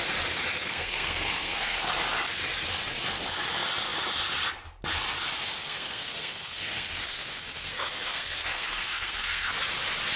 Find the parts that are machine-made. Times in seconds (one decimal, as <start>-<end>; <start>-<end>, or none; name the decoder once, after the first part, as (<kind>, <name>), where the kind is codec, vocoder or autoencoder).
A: 0.5-1.9 (codec, SNAC); 5.6-9.5